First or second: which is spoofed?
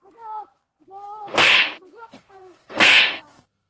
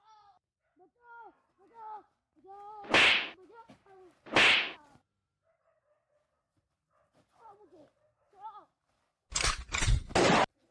first